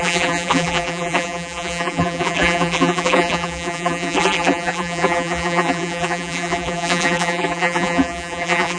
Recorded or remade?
remade